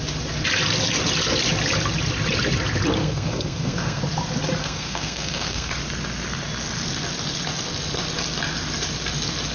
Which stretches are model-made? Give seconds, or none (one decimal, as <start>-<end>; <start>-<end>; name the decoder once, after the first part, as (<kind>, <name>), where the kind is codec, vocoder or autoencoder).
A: 3.0-4.0 (codec, SNAC); 4.6-5.7